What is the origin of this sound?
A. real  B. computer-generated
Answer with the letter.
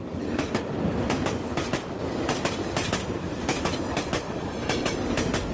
B